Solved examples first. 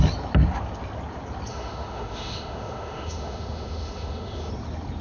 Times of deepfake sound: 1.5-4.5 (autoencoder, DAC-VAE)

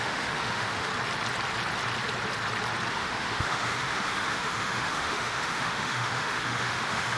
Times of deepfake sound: 0.0-0.9 (autoencoder, DAC-VAE); 2.9-7.2

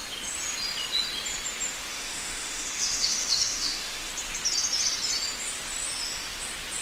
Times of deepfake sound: 1.9-4.1 (autoencoder, DAC-VAE)

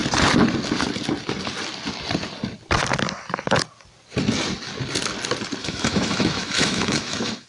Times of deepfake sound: 5.6-7.5 (autoencoder, DAC-VAE)

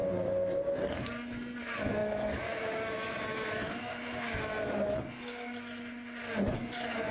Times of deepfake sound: 1.6-4.5 (autoencoder, DAC-VAE)